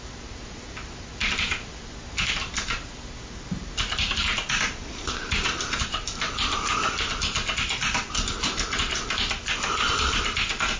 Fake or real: real